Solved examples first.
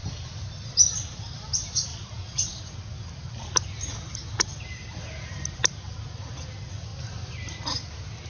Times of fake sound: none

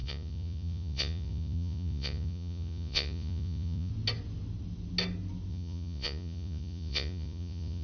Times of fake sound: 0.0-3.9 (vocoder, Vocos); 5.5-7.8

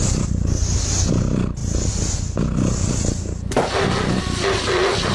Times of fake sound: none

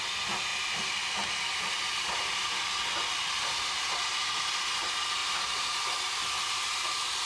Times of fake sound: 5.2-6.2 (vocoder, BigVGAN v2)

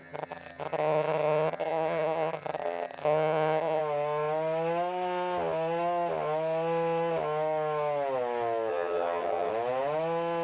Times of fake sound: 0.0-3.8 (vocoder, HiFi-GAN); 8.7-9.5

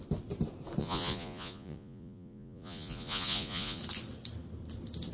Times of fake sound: 0.8-3.8 (vocoder, Vocos)

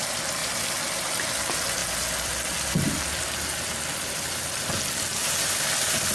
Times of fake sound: none

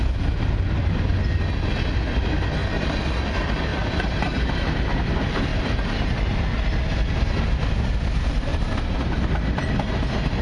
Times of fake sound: 3.7-5.1 (vocoder, BigVGAN v2); 5.5-6.4; 8.5-9.7